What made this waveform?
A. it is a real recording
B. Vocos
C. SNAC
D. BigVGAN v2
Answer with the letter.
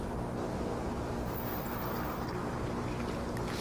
A